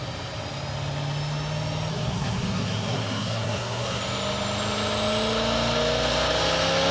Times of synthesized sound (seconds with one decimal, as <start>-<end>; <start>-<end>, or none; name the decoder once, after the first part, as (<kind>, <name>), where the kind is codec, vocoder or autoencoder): 1.9-4.0 (codec, SNAC)